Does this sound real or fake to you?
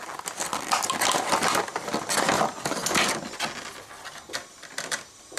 real